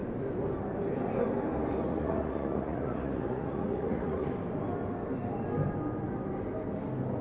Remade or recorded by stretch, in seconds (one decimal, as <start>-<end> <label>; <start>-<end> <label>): 0.0-1.9 recorded; 1.9-4.3 remade; 4.3-7.2 recorded